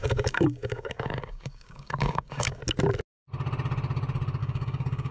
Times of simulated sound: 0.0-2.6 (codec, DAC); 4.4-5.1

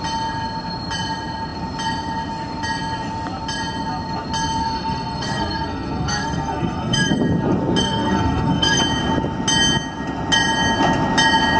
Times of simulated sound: 4.6-7.2 (codec, SNAC); 7.8-8.8

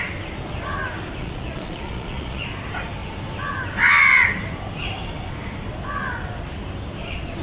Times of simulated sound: 1.2-2.4 (vocoder, Vocos)

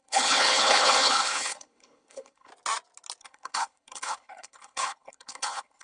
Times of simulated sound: 0.0-2.5 (codec, HILCodec); 3.2-5.8

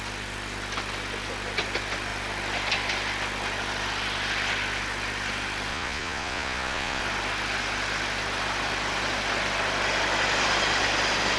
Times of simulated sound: 5.7-7.0 (vocoder, Vocos)

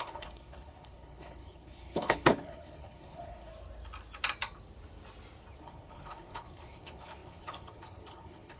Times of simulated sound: 0.0-3.5 (codec, HILCodec); 5.6-8.6